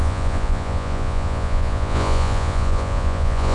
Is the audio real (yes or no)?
no